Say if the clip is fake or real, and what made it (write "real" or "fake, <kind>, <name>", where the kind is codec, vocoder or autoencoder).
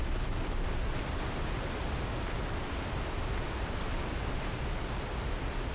real